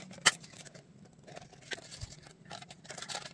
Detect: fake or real real